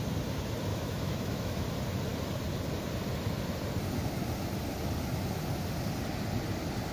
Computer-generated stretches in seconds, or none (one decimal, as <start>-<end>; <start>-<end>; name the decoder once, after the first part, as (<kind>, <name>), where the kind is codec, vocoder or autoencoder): 0.7-1.6 (autoencoder, DAC-VAE)